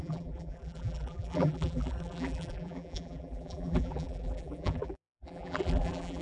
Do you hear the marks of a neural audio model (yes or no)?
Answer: yes